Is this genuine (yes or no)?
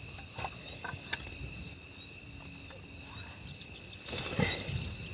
yes